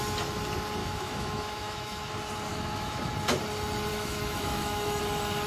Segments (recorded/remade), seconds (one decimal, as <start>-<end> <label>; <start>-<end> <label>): 0.0-0.8 recorded; 0.8-2.1 remade; 2.1-2.5 recorded; 2.5-3.0 remade; 3.0-3.9 recorded; 3.9-5.0 remade; 5.0-5.5 recorded